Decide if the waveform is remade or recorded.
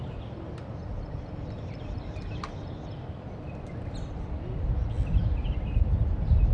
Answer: recorded